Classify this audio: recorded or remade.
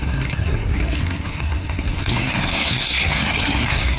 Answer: remade